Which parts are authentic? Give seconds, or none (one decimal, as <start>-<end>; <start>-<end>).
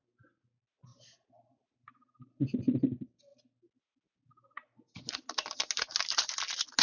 0.0-0.9; 2.6-6.8